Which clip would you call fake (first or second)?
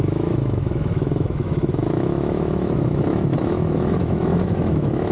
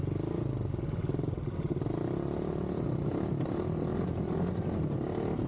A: first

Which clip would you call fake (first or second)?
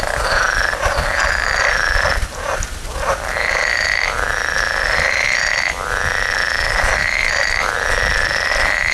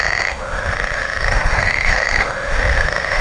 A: second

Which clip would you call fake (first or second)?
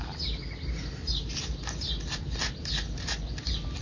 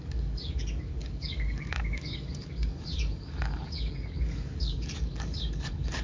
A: second